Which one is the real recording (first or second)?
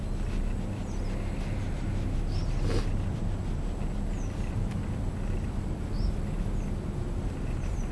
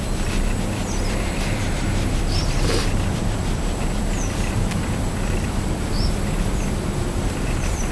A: first